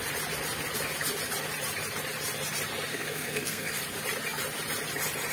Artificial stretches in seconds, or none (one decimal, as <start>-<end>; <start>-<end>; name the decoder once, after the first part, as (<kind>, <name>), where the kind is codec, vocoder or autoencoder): 2.9-3.7 (codec, SNAC)